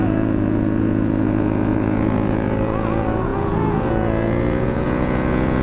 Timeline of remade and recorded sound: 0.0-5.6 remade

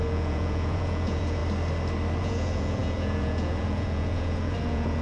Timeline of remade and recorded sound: 0.0-1.4 remade; 1.4-2.2 recorded; 2.2-5.0 remade

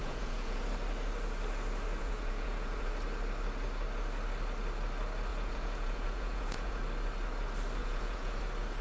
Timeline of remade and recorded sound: 0.0-0.6 remade; 0.6-2.0 recorded; 2.0-2.9 remade; 2.9-5.3 recorded; 5.3-6.8 remade; 6.8-7.8 recorded; 7.8-8.4 remade; 8.4-8.8 recorded

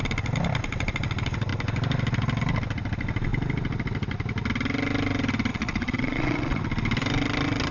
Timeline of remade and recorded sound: 0.0-5.5 recorded; 5.5-6.6 remade; 6.6-7.7 recorded